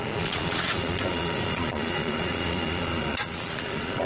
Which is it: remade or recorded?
remade